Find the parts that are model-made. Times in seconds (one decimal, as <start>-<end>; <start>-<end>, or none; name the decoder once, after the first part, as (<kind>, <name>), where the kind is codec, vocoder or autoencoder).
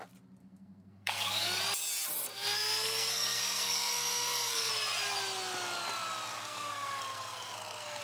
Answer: 0.4-1.6 (codec, SNAC); 2.3-4.7; 6.3-8.0